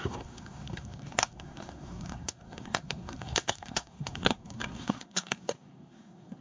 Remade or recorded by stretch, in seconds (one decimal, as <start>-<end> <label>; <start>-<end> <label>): 0.0-6.4 remade